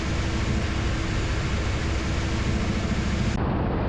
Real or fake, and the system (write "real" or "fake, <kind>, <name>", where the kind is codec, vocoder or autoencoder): real